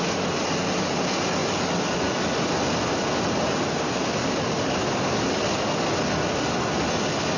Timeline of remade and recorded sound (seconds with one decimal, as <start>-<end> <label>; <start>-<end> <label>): 0.0-7.4 recorded